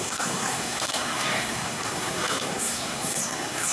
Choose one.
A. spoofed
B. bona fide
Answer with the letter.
A